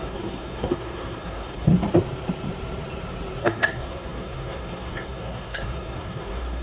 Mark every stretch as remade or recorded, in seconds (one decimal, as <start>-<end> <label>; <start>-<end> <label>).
0.0-1.7 remade; 1.7-3.4 recorded; 3.4-6.6 remade